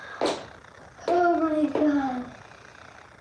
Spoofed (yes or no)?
no